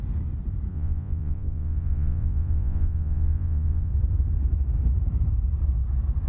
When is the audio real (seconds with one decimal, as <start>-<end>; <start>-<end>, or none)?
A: 0.0-0.7; 3.9-6.3